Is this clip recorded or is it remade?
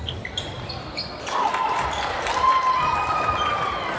recorded